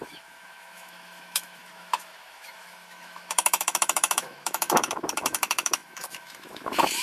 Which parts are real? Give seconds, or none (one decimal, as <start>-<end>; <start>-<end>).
none